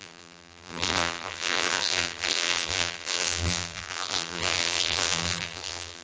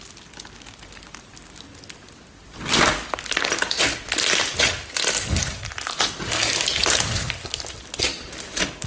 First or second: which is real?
second